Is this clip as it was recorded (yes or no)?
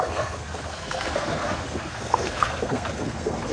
no